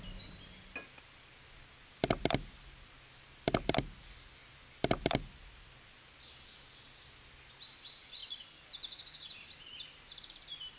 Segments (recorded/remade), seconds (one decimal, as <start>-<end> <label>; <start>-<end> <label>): 0.0-10.8 recorded